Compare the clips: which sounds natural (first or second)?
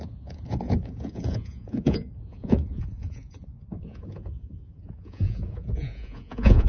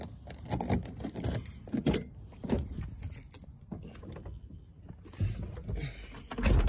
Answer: second